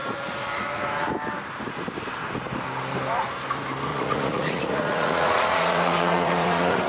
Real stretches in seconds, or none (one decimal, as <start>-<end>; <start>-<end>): 1.1-3.9